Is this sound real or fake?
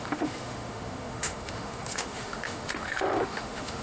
fake